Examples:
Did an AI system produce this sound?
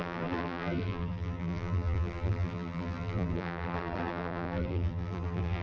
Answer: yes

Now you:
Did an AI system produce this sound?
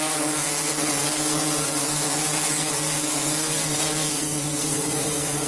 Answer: yes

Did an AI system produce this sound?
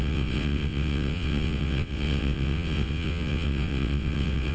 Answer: yes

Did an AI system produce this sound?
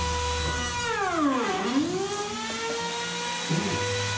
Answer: no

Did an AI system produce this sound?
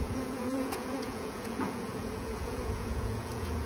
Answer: yes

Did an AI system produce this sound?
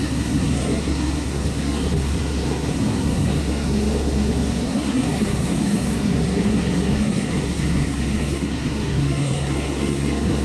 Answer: yes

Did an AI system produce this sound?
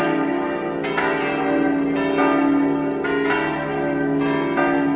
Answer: no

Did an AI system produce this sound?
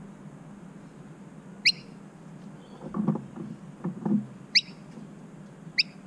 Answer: no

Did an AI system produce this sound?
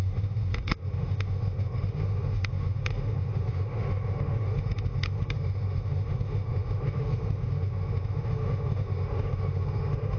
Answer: yes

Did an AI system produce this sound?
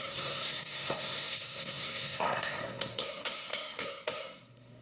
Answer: yes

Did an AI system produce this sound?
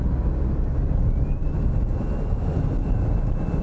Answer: no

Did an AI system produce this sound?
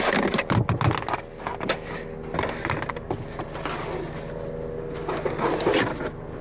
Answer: no